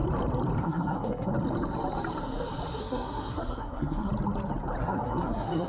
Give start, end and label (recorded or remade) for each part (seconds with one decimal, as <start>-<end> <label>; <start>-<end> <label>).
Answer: 0.0-0.6 recorded; 0.6-1.3 remade; 1.3-2.8 recorded; 2.8-4.1 remade; 4.1-4.8 recorded; 4.8-5.7 remade